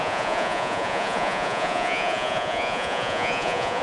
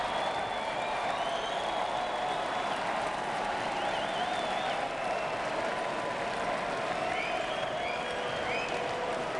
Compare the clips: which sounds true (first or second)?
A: second